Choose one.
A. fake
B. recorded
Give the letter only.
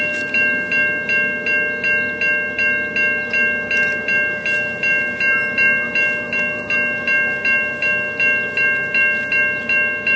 B